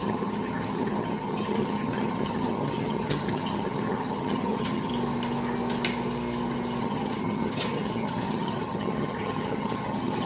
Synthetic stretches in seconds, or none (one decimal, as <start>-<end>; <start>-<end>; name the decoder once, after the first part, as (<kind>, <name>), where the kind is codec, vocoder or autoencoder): 0.0-4.9 (vocoder, HiFi-GAN); 6.8-10.3